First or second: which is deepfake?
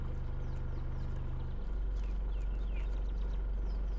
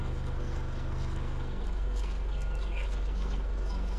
second